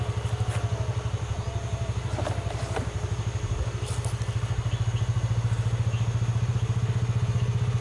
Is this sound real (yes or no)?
yes